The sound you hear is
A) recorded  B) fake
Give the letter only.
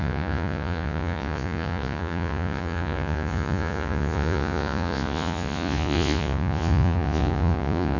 B